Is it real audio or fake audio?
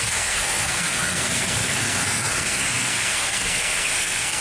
fake